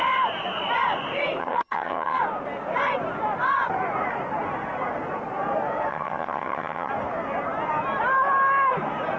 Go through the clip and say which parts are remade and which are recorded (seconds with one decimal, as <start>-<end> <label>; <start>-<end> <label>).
0.0-1.4 recorded; 1.4-2.2 remade; 2.2-5.9 recorded; 5.9-6.9 remade; 6.9-9.2 recorded